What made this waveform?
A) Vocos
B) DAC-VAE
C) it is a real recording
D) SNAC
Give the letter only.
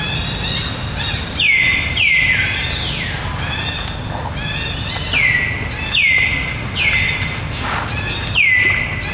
C